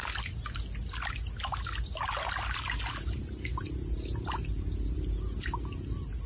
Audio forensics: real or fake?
real